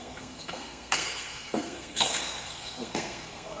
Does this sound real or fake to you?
fake